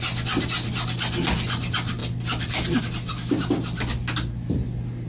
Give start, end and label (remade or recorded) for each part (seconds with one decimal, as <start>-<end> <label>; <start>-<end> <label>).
0.0-5.1 recorded